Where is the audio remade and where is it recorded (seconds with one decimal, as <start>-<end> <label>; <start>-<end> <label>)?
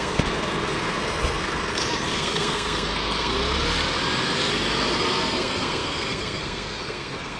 0.0-3.3 remade; 3.3-4.9 recorded; 4.9-7.4 remade